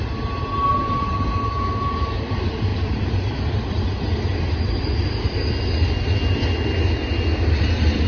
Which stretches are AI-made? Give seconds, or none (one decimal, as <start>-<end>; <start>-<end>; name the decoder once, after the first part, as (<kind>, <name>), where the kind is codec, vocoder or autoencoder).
none